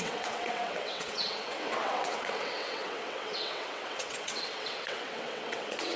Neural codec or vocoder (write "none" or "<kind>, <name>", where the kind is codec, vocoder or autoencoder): vocoder, WaveNeXt